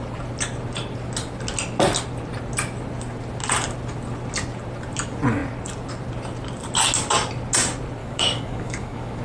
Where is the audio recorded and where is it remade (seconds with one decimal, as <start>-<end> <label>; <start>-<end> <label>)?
0.0-8.0 recorded; 8.0-9.2 remade